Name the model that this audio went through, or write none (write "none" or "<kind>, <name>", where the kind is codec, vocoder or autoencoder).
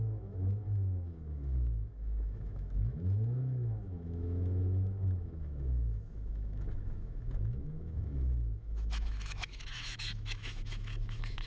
autoencoder, DAC-VAE